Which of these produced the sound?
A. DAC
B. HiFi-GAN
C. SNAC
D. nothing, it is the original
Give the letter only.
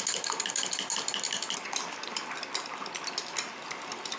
D